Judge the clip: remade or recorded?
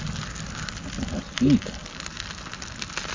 recorded